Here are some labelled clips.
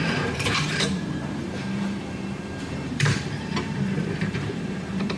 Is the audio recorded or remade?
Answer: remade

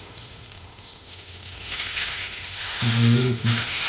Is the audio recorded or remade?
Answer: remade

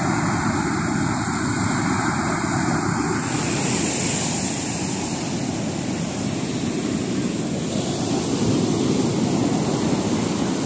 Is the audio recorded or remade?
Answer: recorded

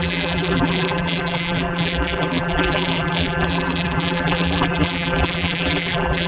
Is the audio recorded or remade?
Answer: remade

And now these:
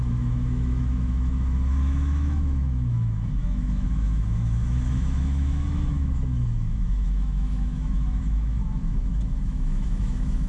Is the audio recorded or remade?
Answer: remade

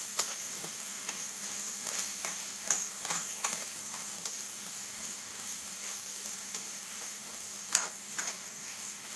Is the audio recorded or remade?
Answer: remade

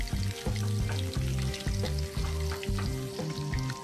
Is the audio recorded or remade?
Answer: recorded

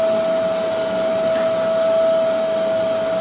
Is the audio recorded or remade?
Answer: recorded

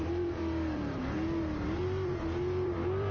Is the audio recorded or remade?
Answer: remade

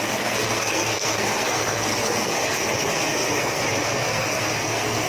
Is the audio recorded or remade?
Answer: remade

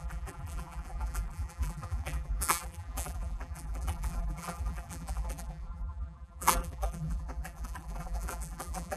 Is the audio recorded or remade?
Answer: remade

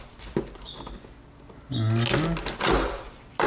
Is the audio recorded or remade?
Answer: recorded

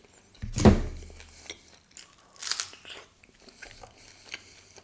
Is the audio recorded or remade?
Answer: recorded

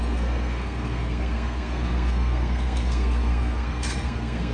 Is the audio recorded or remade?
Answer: remade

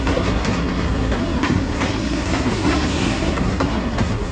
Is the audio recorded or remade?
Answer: remade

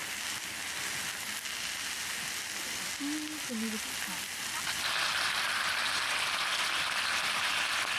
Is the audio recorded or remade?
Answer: recorded